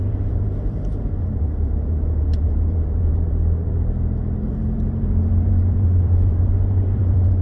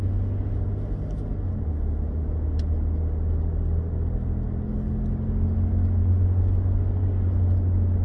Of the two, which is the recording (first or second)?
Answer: second